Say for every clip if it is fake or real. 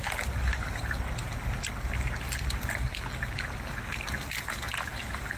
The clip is real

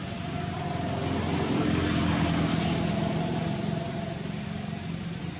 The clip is real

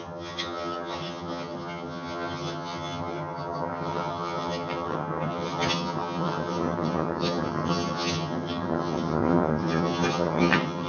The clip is fake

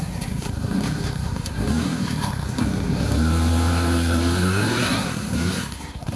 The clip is fake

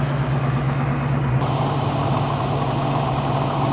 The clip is real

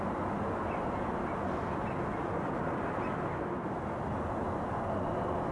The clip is real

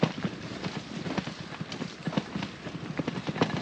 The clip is fake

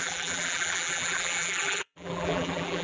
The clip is fake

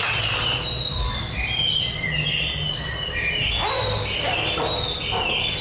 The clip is real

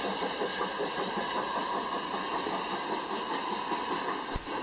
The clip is real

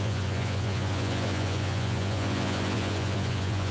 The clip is fake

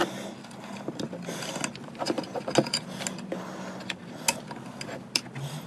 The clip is real